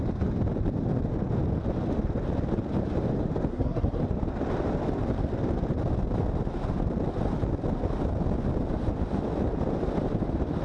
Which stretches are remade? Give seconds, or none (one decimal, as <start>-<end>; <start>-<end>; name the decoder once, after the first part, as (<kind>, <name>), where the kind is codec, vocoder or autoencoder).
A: 3.5-4.0 (codec, SNAC)

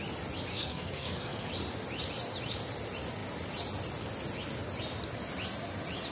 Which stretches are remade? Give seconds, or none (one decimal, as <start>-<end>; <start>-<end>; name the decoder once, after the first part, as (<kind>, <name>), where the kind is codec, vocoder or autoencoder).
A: 0.5-1.5 (codec, SNAC)

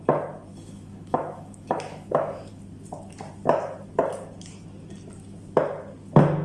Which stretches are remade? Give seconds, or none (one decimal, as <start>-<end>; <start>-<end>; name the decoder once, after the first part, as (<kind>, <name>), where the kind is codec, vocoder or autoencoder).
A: 0.5-2.5 (autoencoder, DAC-VAE)

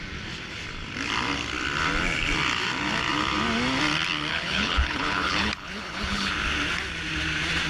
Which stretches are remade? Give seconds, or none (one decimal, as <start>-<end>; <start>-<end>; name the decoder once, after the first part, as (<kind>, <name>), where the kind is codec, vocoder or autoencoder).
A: 4.3-6.3 (codec, HILCodec)

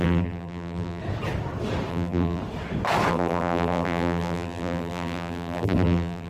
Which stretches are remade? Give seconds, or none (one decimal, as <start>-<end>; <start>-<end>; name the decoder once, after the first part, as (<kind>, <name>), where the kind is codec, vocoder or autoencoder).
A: 0.0-1.0 (vocoder, BigVGAN v2); 1.9-2.4; 3.1-6.3

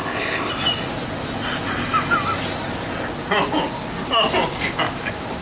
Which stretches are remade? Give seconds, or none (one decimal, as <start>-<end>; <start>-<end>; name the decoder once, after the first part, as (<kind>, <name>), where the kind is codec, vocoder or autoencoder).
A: 0.0-0.5 (codec, ZipCodec)

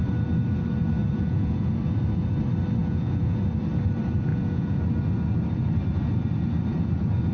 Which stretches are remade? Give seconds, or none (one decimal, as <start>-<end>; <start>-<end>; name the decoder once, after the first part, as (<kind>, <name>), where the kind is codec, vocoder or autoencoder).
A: 1.0-1.7 (vocoder, Vocos); 2.8-3.4; 4.3-4.8

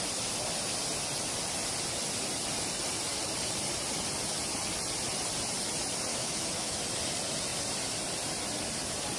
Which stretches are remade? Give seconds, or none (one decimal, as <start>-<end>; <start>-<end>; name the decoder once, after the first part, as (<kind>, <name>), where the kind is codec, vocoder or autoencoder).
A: 6.1-6.8 (autoencoder, DAC-VAE)